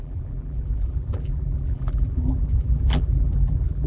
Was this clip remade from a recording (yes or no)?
yes